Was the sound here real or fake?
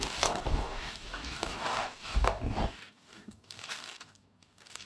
fake